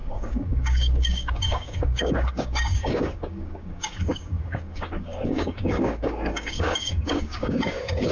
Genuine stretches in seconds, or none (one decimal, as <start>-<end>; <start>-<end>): none